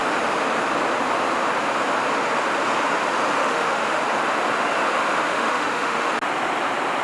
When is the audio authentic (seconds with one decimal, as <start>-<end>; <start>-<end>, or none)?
0.0-3.4; 4.0-5.3; 6.1-7.0